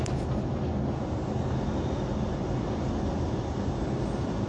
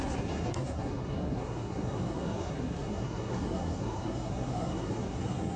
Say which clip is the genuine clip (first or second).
first